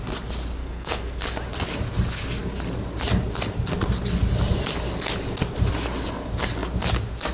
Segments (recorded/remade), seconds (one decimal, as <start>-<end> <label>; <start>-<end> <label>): 0.0-0.6 recorded; 0.6-1.2 remade; 1.2-7.3 recorded